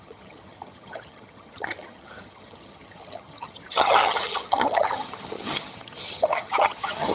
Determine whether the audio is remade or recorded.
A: remade